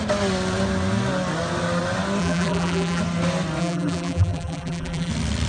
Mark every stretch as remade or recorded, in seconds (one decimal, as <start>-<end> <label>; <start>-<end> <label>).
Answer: 0.0-2.2 recorded; 2.2-3.0 remade; 3.0-3.6 recorded; 3.6-5.1 remade; 5.1-5.5 recorded